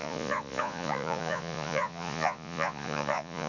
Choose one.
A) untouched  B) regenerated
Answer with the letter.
B